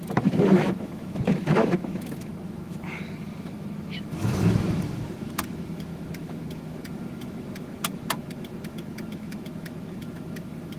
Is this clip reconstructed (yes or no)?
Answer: yes